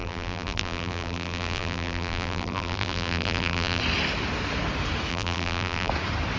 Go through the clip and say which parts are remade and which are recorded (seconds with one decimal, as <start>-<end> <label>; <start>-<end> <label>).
0.0-3.8 remade; 3.8-5.1 recorded; 5.1-5.9 remade; 5.9-6.4 recorded